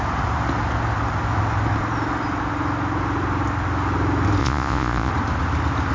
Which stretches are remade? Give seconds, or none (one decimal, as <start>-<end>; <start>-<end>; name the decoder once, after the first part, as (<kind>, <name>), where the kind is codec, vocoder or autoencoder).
4.4-5.1 (vocoder, Vocos)

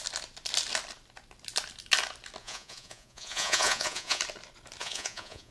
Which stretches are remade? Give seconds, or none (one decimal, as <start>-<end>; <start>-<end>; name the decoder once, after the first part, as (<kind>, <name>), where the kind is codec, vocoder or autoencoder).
2.4-4.2 (vocoder, Vocos); 4.8-5.5